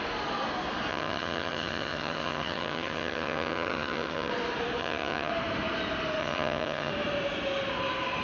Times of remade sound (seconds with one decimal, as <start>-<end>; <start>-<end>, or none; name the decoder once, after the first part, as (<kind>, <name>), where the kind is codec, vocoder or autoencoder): 0.9-4.3 (vocoder, HiFi-GAN); 4.8-5.3; 6.2-6.9